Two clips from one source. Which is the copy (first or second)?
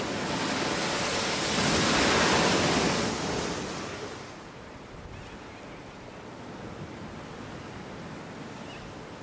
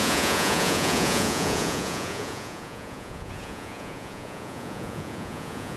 second